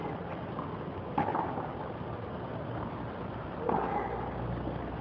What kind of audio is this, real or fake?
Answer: real